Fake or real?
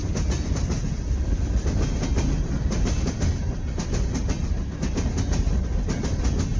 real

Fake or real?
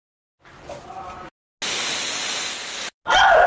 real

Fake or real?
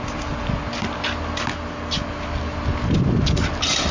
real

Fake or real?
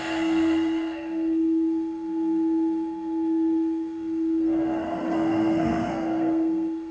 fake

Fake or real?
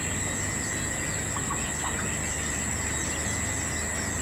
real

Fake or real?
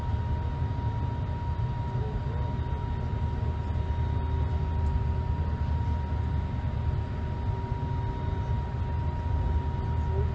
real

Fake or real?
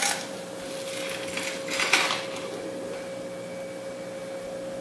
real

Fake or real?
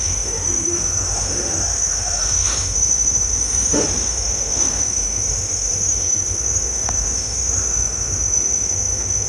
fake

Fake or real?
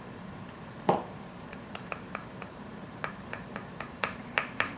fake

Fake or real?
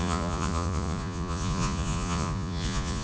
fake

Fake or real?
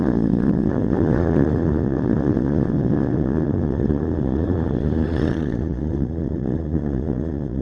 fake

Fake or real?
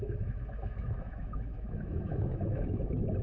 fake